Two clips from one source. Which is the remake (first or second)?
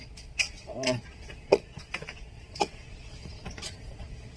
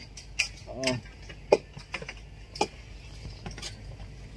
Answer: first